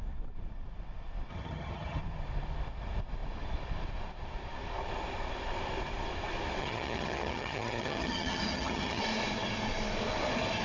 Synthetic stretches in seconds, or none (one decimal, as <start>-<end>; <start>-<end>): 1.3-2.0; 6.6-9.0